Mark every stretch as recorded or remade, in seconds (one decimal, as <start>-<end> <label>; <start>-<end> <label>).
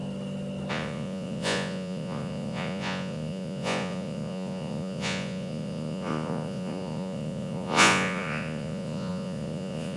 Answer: 0.0-0.7 recorded; 0.7-10.0 remade